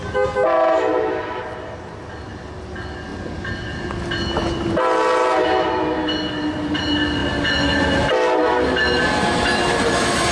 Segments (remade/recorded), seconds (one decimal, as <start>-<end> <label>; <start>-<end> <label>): 0.0-10.3 recorded